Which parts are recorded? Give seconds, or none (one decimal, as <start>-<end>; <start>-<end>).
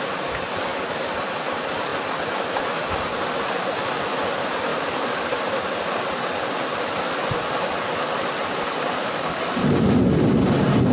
0.0-4.7; 5.4-10.9